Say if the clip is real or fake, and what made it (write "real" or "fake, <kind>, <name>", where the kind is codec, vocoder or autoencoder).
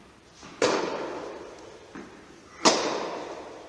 real